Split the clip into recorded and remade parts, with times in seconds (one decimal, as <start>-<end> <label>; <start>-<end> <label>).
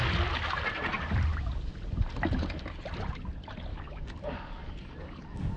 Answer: 0.0-3.7 recorded; 3.7-5.6 remade